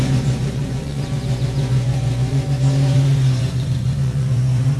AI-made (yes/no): yes